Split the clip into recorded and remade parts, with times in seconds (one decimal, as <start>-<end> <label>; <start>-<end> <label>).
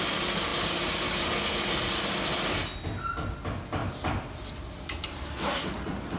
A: 0.0-6.2 recorded